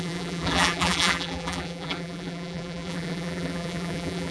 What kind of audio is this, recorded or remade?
remade